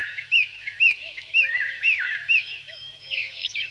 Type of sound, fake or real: fake